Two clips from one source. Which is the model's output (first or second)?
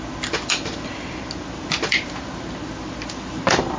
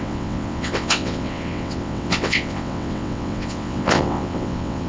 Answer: second